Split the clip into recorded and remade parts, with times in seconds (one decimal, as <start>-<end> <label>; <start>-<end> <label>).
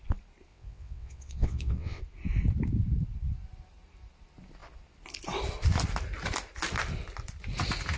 0.0-0.5 recorded; 0.5-2.0 remade; 2.0-8.0 recorded